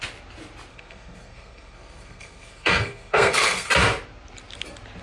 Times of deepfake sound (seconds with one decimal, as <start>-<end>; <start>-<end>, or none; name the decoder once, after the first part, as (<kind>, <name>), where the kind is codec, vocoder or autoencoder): 0.7-3.7 (codec, SNAC)